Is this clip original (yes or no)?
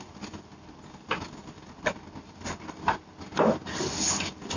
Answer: yes